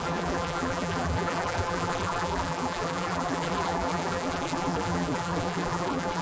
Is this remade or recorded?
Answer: remade